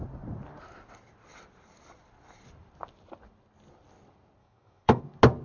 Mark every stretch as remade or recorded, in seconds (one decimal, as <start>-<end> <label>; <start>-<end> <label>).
0.0-4.4 recorded; 4.4-5.0 remade; 5.0-5.4 recorded